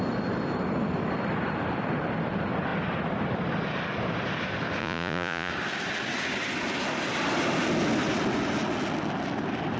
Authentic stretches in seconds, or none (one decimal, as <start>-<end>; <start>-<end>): 0.0-4.8; 5.5-9.8